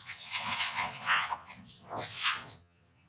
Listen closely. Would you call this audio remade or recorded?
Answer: remade